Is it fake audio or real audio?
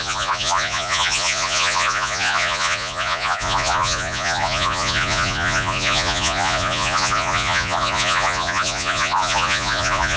fake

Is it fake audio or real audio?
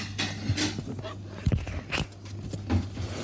real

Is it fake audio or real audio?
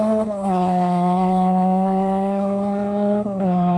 fake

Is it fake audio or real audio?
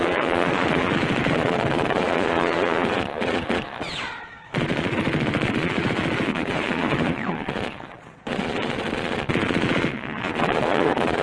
fake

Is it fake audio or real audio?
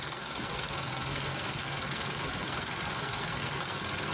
fake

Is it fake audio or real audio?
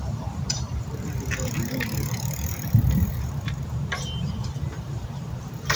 fake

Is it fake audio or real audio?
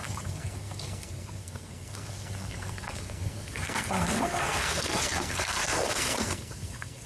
fake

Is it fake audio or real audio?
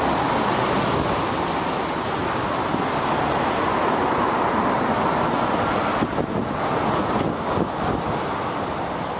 real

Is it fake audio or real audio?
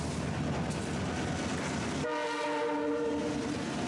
real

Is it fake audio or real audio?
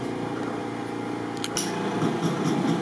real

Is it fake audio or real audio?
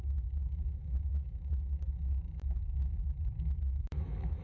fake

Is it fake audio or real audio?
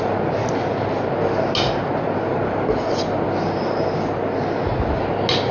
real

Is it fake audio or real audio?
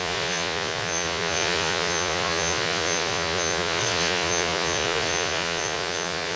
fake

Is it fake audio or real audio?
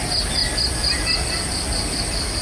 real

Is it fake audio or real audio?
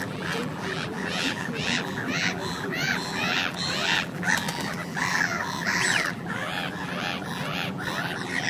fake